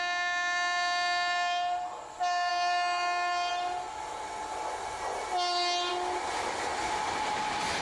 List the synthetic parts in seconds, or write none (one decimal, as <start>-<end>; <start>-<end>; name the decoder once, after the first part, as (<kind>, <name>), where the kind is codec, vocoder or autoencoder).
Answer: 6.7-7.8 (vocoder, BigVGAN v2)